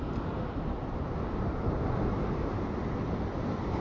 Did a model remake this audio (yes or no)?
no